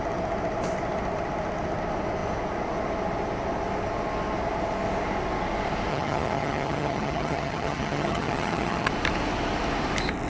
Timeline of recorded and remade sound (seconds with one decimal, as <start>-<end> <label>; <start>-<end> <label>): 0.0-5.9 recorded; 5.9-8.9 remade; 8.9-10.3 recorded